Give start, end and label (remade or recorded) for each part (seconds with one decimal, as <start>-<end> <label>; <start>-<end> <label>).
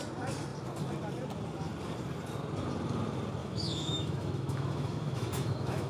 0.0-3.4 recorded; 3.4-5.9 remade